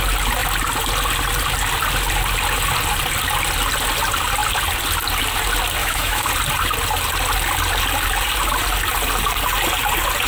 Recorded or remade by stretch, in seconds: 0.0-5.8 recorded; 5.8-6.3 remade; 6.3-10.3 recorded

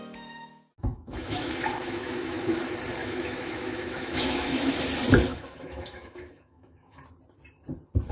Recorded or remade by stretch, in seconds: 0.0-0.9 recorded; 0.9-2.6 remade; 2.6-3.0 recorded; 3.0-4.8 remade; 4.8-5.3 recorded; 5.3-7.0 remade; 7.0-8.1 recorded

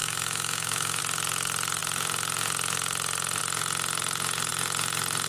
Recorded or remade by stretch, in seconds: 0.0-1.0 remade; 1.0-5.3 recorded

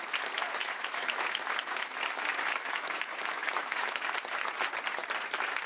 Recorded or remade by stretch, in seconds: 0.0-0.6 recorded; 0.6-4.0 remade; 4.0-5.7 recorded

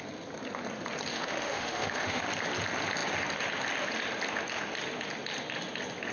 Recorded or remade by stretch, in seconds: 0.0-1.1 recorded; 1.1-2.2 remade; 2.2-6.1 recorded